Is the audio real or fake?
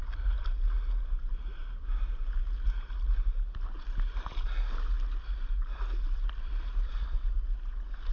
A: real